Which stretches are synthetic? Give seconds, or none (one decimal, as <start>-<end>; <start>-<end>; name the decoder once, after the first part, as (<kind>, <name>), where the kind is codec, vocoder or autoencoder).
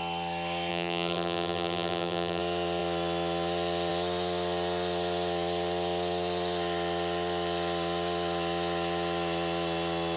0.7-2.4 (vocoder, BigVGAN v2)